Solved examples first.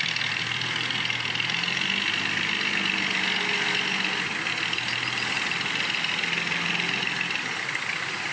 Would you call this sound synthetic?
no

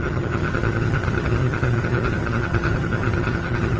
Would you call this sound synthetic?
yes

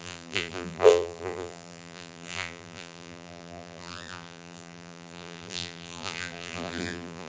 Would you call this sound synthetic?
yes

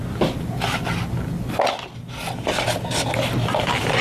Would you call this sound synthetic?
no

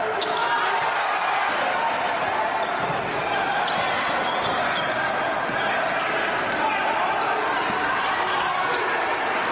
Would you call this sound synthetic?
no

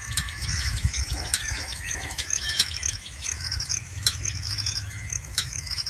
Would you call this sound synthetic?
yes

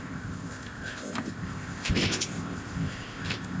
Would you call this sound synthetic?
yes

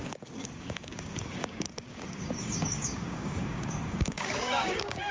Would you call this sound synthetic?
yes